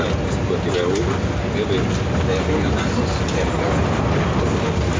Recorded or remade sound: recorded